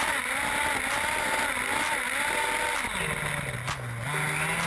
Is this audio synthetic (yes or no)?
no